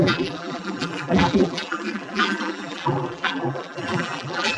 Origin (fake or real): fake